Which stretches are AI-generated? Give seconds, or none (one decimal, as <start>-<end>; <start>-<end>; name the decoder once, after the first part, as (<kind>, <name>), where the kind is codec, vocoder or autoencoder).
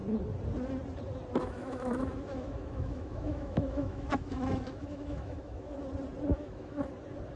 1.4-5.8 (autoencoder, DAC-VAE); 6.3-6.8